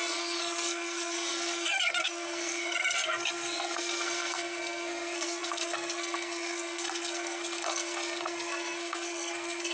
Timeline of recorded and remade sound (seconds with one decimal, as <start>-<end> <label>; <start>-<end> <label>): 0.0-9.7 remade

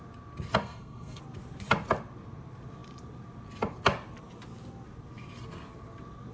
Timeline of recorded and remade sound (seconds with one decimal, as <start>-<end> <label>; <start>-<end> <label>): 0.0-0.6 recorded; 0.6-1.2 remade; 1.2-6.3 recorded

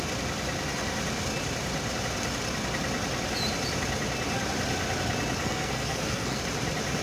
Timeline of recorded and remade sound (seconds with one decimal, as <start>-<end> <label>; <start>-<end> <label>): 0.0-5.4 recorded; 5.4-6.4 remade; 6.4-7.0 recorded

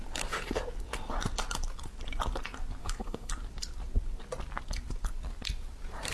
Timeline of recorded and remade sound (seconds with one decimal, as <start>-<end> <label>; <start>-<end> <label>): 0.0-2.8 recorded; 2.8-3.3 remade; 3.3-6.1 recorded